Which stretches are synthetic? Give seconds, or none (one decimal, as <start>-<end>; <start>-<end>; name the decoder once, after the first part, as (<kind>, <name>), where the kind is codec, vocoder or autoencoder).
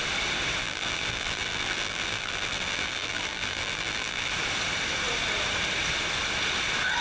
0.6-4.3 (vocoder, BigVGAN v2)